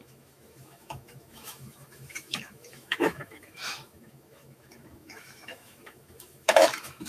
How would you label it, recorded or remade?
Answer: remade